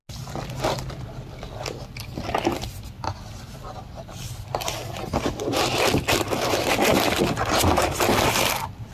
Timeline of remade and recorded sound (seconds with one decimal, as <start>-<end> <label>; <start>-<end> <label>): 0.0-8.9 recorded